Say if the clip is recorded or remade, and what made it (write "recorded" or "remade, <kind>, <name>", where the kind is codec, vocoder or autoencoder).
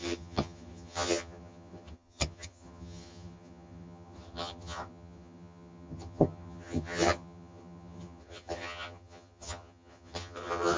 remade, vocoder, HiFi-GAN